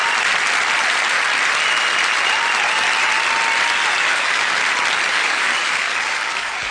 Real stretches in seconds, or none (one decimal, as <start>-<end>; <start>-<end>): 0.0-4.0; 4.6-5.1